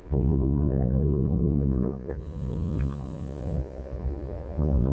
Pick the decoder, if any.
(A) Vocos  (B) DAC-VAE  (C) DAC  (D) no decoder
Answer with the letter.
A